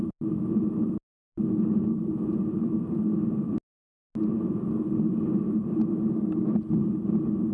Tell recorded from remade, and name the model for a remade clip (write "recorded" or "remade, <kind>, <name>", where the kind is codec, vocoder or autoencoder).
recorded